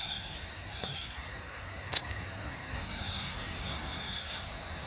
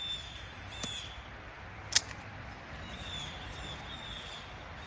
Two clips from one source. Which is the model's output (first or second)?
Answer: first